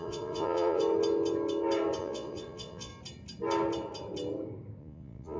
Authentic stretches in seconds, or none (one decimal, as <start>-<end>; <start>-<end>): 0.8-2.0; 2.9-4.8